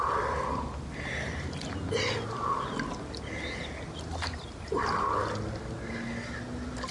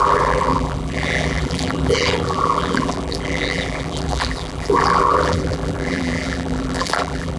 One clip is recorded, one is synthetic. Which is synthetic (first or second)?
second